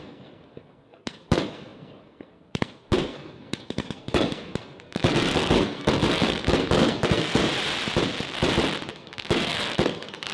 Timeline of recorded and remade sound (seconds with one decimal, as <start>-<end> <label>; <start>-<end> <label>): 0.0-7.4 remade; 7.4-8.9 recorded; 8.9-10.3 remade